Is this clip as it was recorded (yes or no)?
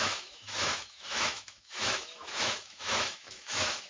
no